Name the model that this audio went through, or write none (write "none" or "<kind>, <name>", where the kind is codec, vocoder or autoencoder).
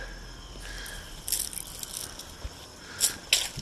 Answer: none